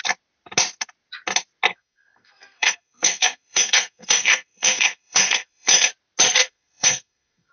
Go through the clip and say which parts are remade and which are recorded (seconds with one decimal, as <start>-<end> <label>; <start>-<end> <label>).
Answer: 0.0-1.7 recorded; 1.7-5.9 remade; 5.9-6.4 recorded; 6.4-7.5 remade

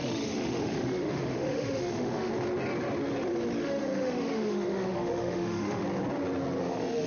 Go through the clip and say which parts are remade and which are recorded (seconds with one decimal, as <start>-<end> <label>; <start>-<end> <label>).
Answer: 0.0-2.3 remade; 2.3-3.6 recorded; 3.6-5.8 remade; 5.8-6.6 recorded; 6.6-7.1 remade

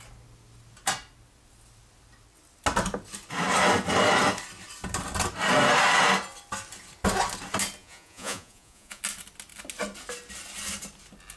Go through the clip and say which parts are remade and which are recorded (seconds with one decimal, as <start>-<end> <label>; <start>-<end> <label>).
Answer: 0.0-7.8 recorded; 7.8-9.0 remade; 9.0-11.4 recorded

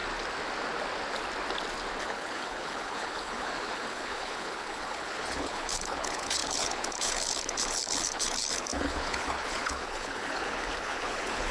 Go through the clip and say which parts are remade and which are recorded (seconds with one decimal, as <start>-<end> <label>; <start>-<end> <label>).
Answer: 0.0-2.0 recorded; 2.0-11.5 remade

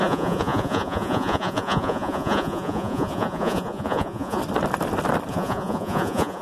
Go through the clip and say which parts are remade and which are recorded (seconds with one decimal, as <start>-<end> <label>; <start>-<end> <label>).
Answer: 0.0-4.4 remade; 4.4-5.3 recorded; 5.3-6.4 remade

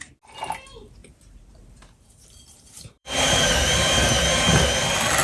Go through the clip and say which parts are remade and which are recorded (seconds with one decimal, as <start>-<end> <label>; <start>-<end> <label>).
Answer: 0.0-1.0 recorded; 1.0-4.0 remade; 4.0-5.2 recorded